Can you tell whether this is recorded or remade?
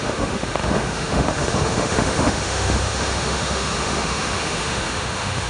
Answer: remade